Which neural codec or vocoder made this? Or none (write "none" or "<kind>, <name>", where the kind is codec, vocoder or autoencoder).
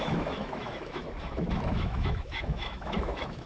autoencoder, DAC-VAE